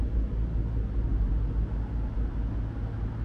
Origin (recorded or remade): recorded